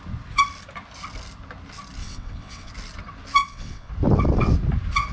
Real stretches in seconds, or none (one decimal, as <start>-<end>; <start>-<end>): 0.0-2.0; 2.7-3.4; 3.9-5.1

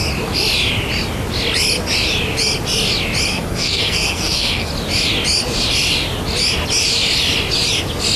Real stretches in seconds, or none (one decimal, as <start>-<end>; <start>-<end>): 0.0-3.3; 4.7-8.2

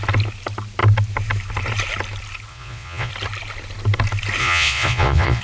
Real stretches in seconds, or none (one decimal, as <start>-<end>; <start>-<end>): 0.0-2.5; 3.1-4.4

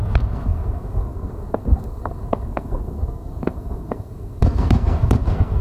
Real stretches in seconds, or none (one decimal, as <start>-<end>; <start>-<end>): none

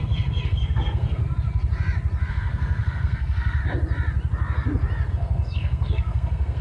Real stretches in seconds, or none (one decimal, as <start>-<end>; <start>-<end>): 1.2-2.3; 3.6-5.1

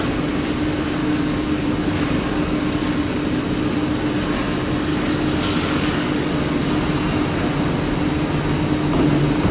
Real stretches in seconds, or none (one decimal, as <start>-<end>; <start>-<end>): 0.0-1.0; 3.2-4.9; 6.7-9.5

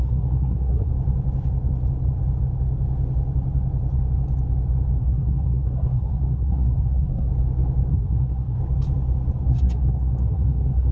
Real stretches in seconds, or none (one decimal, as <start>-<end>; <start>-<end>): 0.9-5.0; 7.3-7.9; 8.6-9.5